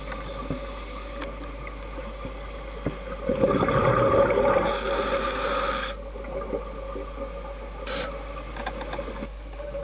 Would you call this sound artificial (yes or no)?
no